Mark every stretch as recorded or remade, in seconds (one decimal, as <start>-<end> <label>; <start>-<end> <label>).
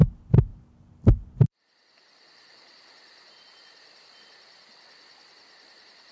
0.0-6.1 recorded